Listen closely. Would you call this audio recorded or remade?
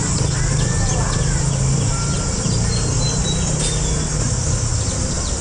recorded